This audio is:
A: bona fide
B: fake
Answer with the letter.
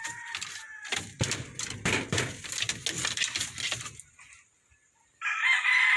A